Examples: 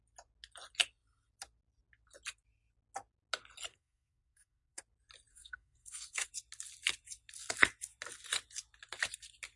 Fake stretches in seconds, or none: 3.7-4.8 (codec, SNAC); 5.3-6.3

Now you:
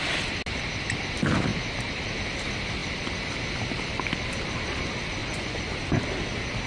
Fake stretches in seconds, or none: 5.2-5.7 (vocoder, Vocos)

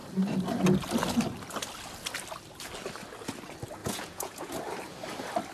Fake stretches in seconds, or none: 3.8-4.5 (vocoder, Vocos)

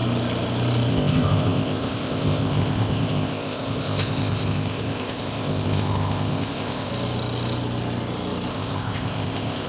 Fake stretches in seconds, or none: 0.9-6.9 (codec, ZipCodec); 8.5-9.7